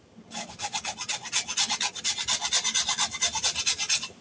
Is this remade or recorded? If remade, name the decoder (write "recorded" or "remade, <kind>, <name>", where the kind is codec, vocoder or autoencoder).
recorded